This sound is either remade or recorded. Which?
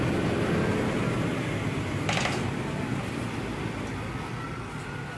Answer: recorded